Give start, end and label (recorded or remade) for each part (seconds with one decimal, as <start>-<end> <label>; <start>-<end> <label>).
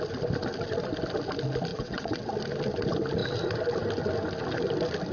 0.0-1.7 recorded; 1.7-2.3 remade; 2.3-5.1 recorded